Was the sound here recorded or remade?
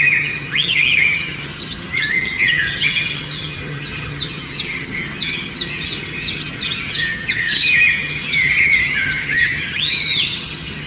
remade